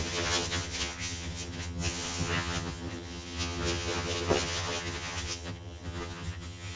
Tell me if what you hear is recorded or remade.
remade